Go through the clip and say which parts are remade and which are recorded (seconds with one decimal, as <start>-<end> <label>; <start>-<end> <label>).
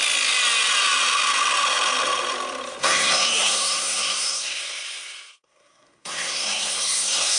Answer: 0.0-2.8 recorded; 2.8-7.4 remade